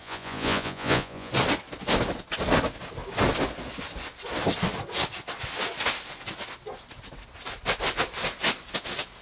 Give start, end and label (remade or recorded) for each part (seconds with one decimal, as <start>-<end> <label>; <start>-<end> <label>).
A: 0.0-1.3 remade; 1.3-9.2 recorded